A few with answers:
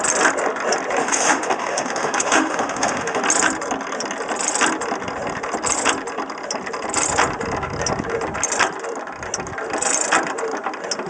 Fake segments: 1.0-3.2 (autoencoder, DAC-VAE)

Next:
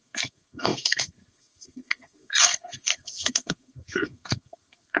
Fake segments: 0.0-5.0 (codec, SNAC)

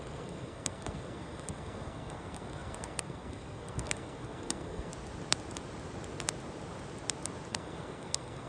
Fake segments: 0.0-4.9 (codec, SNAC); 7.5-8.5

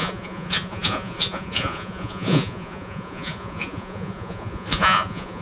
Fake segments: 0.0-5.4 (vocoder, Vocos)